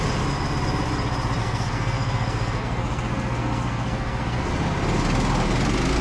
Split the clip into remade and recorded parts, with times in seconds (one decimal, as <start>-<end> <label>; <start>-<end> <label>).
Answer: 0.0-1.4 recorded; 1.4-4.5 remade; 4.5-6.0 recorded